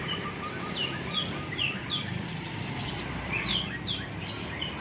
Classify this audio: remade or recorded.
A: remade